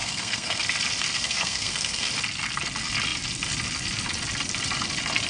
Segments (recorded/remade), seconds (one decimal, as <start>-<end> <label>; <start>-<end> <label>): 0.0-0.6 remade; 0.6-1.0 recorded; 1.0-2.1 remade; 2.1-5.3 recorded

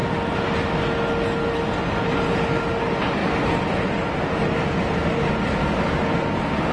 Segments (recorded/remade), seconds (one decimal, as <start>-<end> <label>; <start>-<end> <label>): 0.0-6.7 recorded

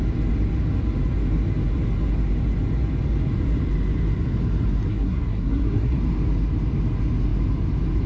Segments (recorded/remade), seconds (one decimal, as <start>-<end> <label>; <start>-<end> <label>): 0.0-4.9 recorded; 4.9-6.0 remade; 6.0-8.1 recorded

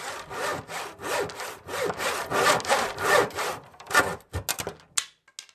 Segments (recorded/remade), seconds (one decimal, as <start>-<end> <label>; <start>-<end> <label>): 0.0-3.2 recorded; 3.2-4.3 remade; 4.3-5.5 recorded

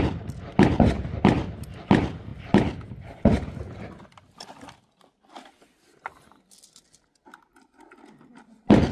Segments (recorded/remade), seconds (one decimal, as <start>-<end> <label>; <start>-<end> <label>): 0.0-8.9 recorded

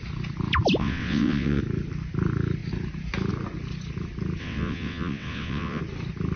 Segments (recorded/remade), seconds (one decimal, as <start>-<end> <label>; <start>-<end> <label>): 0.0-0.8 recorded; 0.8-1.6 remade; 1.6-4.4 recorded; 4.4-5.8 remade; 5.8-6.4 recorded

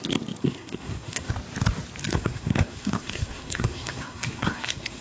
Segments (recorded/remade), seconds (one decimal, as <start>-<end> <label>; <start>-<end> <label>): 0.0-0.4 recorded; 0.4-1.3 remade; 1.3-2.0 recorded; 2.0-5.0 remade